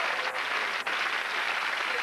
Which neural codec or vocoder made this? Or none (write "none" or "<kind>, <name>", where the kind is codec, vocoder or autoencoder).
none